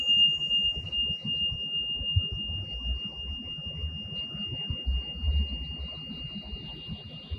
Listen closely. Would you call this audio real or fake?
real